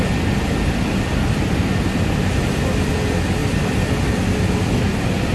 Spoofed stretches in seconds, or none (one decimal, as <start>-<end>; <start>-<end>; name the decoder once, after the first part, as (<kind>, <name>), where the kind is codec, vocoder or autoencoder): 3.4-4.6 (vocoder, BigVGAN v2)